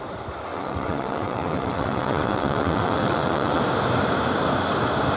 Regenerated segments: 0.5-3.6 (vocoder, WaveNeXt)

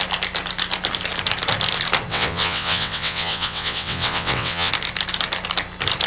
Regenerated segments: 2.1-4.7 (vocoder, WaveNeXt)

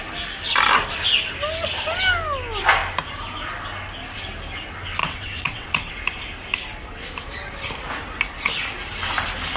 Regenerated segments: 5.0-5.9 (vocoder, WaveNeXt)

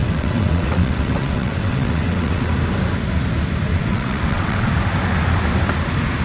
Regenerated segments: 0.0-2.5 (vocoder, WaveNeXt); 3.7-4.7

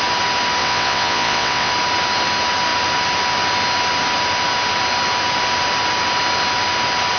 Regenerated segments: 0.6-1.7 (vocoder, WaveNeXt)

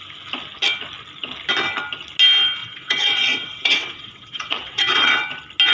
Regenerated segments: 2.6-5.1 (vocoder, WaveNeXt)

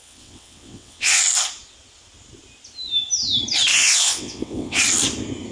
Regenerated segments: 0.0-1.2 (vocoder, WaveNeXt); 3.7-4.8

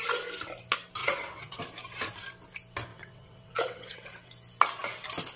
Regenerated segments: 1.0-1.6 (vocoder, WaveNeXt); 2.9-4.3